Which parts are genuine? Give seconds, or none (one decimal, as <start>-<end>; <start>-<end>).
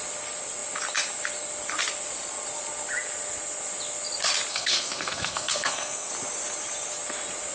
0.0-4.5; 6.1-7.5